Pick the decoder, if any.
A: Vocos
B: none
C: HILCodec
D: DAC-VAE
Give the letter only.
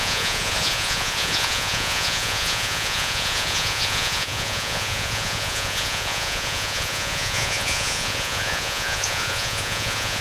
A